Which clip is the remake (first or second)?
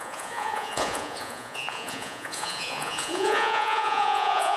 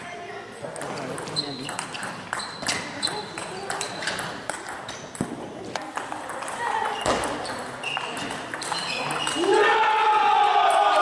first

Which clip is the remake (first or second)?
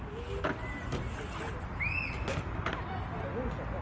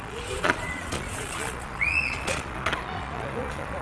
second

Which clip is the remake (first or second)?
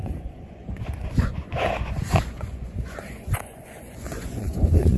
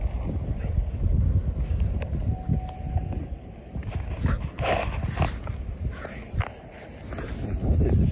first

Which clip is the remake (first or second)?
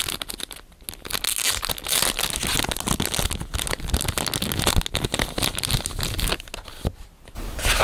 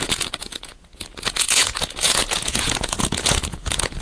second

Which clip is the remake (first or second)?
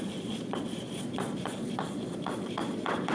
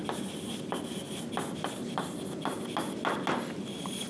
first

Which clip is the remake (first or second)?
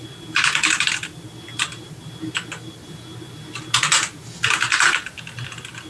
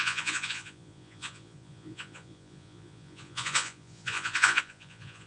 second